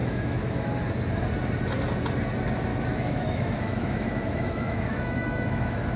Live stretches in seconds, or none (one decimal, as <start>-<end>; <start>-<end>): 0.7-2.7